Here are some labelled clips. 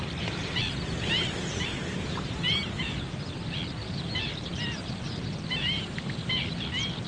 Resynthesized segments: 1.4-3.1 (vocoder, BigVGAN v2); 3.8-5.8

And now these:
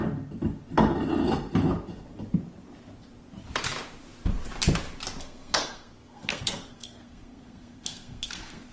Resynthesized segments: 5.2-8.7 (codec, SNAC)

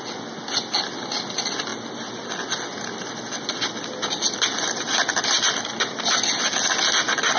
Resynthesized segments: none

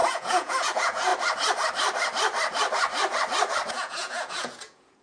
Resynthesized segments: 0.0-1.1 (vocoder, Vocos); 3.7-5.0

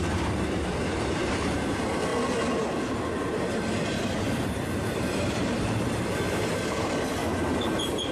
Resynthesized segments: 0.0-2.1 (vocoder, BigVGAN v2); 2.9-8.1

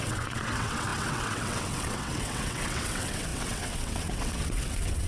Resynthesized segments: 0.0-5.1 (vocoder, WaveNeXt)

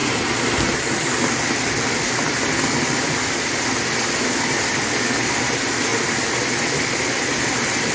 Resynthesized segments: none

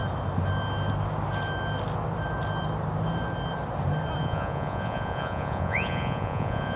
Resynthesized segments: 4.2-6.8 (vocoder, Vocos)